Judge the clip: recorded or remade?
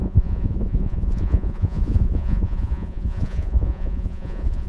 remade